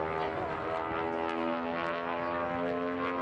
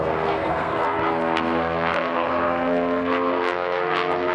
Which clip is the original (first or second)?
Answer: first